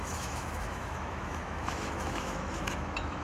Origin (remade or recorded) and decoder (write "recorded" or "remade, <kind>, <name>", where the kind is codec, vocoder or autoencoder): remade, autoencoder, DAC-VAE